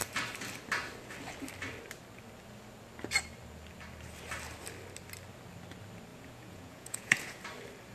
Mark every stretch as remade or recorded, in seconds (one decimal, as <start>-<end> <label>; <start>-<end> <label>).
0.0-6.1 recorded; 6.1-7.4 remade; 7.4-7.9 recorded